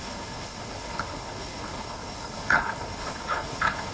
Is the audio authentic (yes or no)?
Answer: no